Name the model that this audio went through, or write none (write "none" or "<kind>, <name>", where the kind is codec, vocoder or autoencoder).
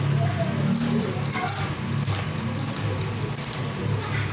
none